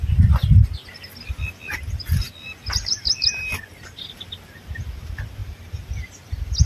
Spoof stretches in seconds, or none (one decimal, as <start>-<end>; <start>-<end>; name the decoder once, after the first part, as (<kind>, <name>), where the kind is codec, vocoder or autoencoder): 5.4-6.7 (vocoder, BigVGAN v2)